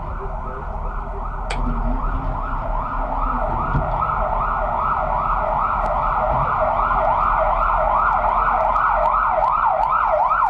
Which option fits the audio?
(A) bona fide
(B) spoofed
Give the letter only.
A